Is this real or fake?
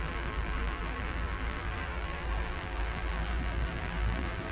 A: fake